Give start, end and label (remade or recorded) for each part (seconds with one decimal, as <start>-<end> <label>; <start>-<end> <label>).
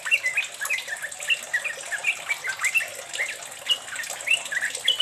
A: 0.0-2.0 recorded; 2.0-2.7 remade; 2.7-5.0 recorded